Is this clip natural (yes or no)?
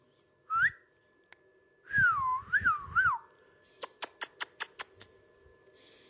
yes